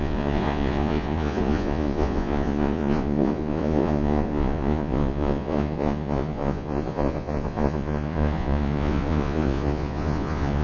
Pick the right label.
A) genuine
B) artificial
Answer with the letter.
B